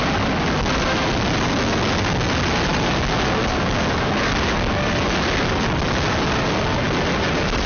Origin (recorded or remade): recorded